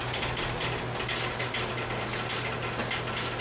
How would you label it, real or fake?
real